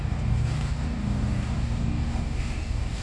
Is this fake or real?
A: fake